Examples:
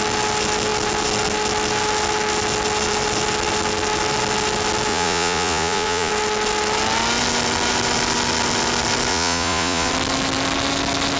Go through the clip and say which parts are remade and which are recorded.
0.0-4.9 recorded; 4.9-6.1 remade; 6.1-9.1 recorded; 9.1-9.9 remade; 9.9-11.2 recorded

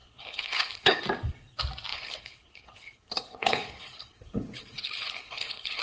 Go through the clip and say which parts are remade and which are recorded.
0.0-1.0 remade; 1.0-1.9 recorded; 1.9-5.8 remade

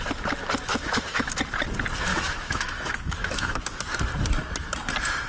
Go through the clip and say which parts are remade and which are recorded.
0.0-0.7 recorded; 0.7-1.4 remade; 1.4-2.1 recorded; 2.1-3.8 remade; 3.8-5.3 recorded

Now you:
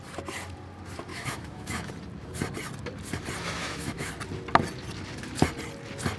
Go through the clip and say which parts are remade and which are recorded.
0.0-1.1 recorded; 1.1-1.9 remade; 1.9-3.6 recorded; 3.6-4.1 remade; 4.1-6.2 recorded

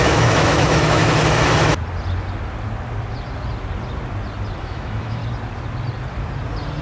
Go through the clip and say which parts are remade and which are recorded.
0.0-1.0 remade; 1.0-4.6 recorded; 4.6-5.2 remade; 5.2-6.8 recorded

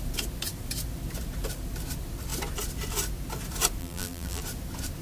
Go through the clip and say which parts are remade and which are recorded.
0.0-3.8 recorded; 3.8-4.4 remade; 4.4-5.0 recorded

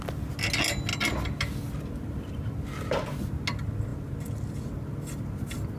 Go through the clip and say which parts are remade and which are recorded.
0.0-5.8 recorded